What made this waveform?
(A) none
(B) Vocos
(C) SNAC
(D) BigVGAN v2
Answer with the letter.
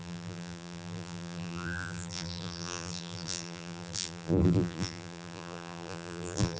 D